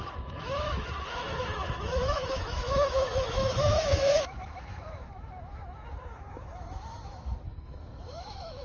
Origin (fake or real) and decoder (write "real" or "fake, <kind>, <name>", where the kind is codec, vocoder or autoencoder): fake, autoencoder, DAC-VAE